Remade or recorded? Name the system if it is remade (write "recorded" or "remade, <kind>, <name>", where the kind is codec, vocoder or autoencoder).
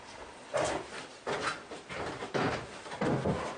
recorded